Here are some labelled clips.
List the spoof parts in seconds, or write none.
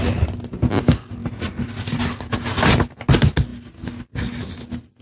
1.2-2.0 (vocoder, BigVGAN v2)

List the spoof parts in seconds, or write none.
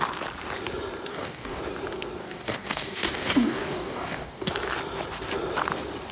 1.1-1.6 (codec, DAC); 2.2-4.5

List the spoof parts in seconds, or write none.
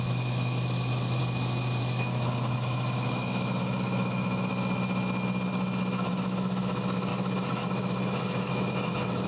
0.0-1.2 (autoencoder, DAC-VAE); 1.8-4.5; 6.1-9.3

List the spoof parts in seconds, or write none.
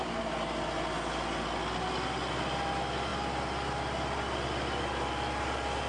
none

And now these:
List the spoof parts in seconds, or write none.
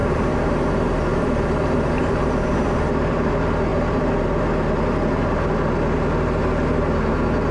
0.0-0.7 (vocoder, BigVGAN v2); 1.1-3.3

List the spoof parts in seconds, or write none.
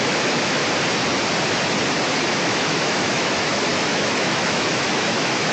0.0-0.6 (autoencoder, DAC-VAE); 2.3-5.5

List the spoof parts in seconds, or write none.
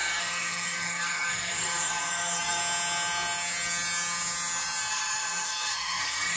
0.0-2.6 (codec, SNAC); 4.9-6.4